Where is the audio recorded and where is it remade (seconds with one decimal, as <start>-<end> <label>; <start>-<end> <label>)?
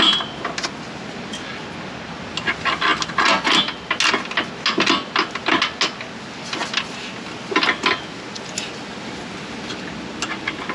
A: 0.0-10.7 recorded